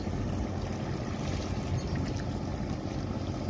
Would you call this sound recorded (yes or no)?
yes